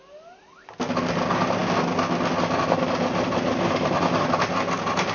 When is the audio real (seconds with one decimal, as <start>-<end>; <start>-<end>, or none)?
0.0-5.1